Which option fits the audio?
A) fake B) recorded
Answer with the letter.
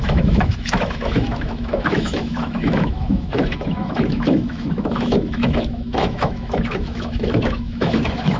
A